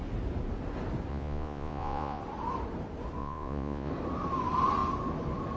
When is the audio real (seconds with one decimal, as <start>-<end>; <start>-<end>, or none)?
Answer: 0.0-1.1; 2.2-3.2; 3.9-5.6